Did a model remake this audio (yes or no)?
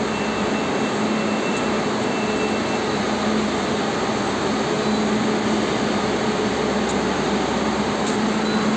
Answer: no